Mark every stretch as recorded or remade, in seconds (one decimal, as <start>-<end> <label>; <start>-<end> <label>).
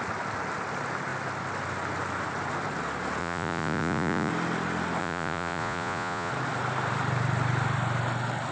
0.0-3.2 recorded; 3.2-4.3 remade; 4.3-5.0 recorded; 5.0-6.3 remade; 6.3-8.5 recorded